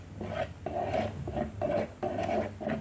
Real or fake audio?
real